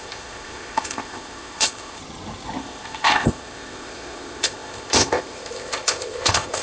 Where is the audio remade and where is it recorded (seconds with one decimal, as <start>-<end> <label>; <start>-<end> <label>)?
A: 0.0-2.0 remade; 2.0-2.6 recorded; 2.6-6.6 remade